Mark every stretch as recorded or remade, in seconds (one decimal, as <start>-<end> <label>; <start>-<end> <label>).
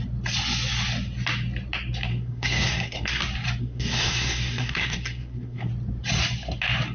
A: 0.0-2.1 recorded; 2.1-3.2 remade; 3.2-3.6 recorded; 3.6-5.7 remade; 5.7-6.9 recorded